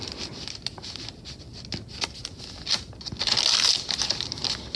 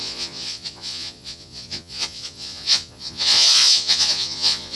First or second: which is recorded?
first